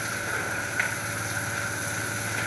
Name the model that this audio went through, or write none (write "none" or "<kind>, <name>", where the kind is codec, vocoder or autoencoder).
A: none